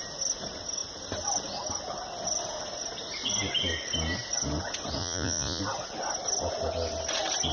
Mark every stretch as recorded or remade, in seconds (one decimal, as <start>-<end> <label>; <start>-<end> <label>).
0.0-5.0 recorded; 5.0-5.6 remade; 5.6-7.5 recorded